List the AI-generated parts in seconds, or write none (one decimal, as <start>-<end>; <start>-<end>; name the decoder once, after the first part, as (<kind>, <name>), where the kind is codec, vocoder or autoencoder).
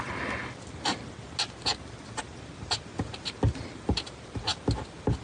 none